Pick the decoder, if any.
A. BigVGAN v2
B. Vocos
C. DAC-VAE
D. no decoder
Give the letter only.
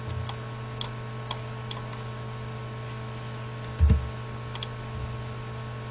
D